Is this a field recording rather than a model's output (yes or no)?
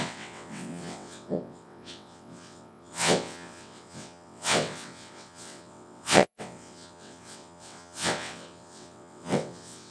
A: no